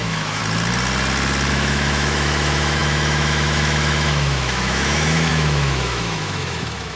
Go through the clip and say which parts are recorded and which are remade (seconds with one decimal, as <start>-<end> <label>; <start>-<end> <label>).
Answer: 0.0-0.4 remade; 0.4-1.5 recorded; 1.5-7.0 remade